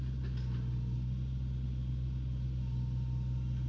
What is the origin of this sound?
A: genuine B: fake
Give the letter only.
A